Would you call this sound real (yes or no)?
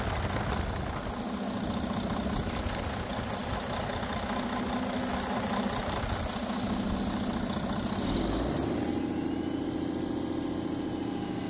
yes